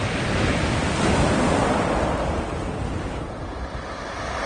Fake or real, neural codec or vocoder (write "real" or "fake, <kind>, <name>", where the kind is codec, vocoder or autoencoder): real